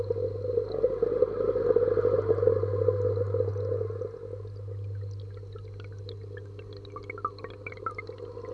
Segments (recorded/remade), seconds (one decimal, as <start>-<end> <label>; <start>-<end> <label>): 0.0-8.5 recorded